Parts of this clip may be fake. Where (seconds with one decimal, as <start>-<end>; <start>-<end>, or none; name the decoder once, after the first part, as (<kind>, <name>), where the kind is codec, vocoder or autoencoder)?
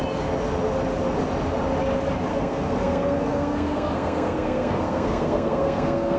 2.3-6.2 (codec, SNAC)